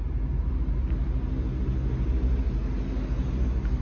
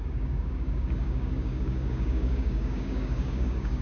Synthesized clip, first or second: second